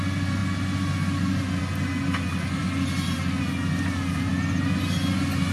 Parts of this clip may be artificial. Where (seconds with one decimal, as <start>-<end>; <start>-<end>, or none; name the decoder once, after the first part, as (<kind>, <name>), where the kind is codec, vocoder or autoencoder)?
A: none